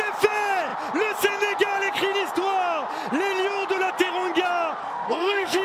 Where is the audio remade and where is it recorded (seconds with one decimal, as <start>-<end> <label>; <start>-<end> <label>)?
0.0-4.8 recorded; 4.8-5.6 remade